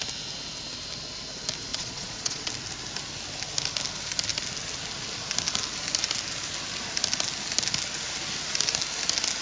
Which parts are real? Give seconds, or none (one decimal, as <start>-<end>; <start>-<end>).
0.0-1.7; 2.5-9.4